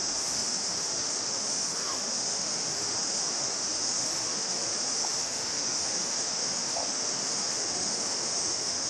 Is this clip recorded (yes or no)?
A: no